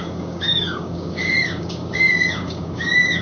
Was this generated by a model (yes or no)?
yes